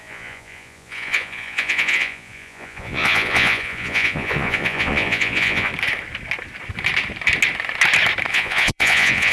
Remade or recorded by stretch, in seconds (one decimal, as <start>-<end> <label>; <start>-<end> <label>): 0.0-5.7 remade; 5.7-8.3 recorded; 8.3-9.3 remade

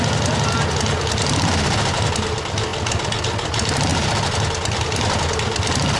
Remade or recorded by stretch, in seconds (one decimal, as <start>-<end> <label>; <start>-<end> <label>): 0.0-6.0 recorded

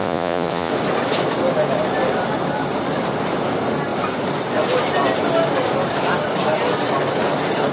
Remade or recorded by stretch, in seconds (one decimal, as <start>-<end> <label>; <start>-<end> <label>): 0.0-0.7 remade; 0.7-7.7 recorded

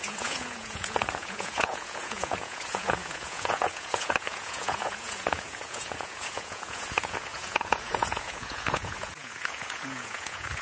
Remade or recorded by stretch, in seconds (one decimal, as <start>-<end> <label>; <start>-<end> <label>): 0.0-10.6 remade

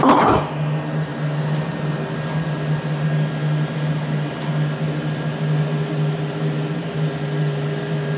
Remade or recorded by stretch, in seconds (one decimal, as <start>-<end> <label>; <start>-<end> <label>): 0.0-8.2 recorded

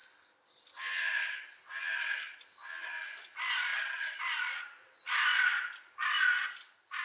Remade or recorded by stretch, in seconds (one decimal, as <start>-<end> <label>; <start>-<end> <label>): 0.0-3.7 recorded; 3.7-4.2 remade; 4.2-7.0 recorded

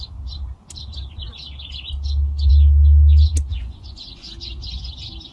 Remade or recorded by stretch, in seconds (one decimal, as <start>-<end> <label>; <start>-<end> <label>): 0.0-3.5 recorded; 3.5-4.3 remade; 4.3-5.3 recorded